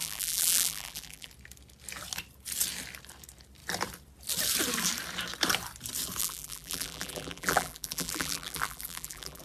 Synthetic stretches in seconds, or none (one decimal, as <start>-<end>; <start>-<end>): 0.0-1.3; 6.2-9.4